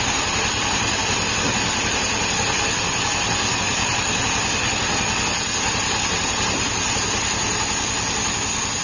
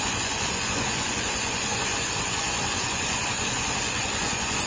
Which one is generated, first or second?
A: second